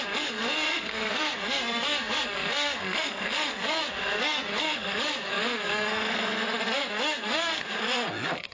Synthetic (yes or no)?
yes